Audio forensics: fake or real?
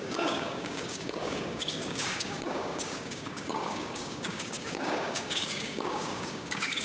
fake